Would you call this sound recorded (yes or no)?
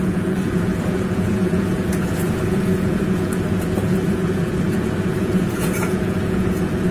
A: no